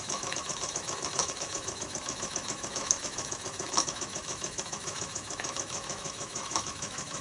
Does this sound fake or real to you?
fake